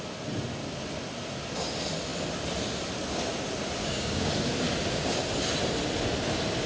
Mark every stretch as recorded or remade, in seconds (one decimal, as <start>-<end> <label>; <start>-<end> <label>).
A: 0.0-3.8 recorded; 3.8-4.3 remade; 4.3-6.7 recorded